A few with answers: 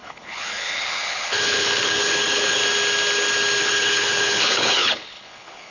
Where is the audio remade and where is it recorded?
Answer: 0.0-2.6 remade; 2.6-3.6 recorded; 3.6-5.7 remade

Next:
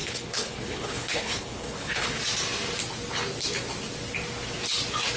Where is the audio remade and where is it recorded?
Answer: 0.0-2.2 remade; 2.2-5.2 recorded